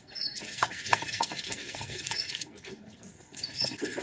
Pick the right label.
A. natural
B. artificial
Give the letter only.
B